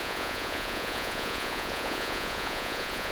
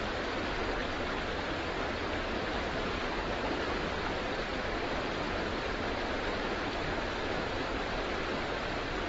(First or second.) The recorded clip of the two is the second